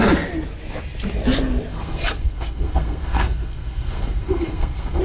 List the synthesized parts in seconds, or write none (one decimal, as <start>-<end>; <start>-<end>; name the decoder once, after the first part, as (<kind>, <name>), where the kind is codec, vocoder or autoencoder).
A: 1.7-5.0 (codec, SNAC)